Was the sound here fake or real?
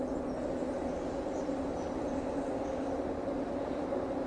real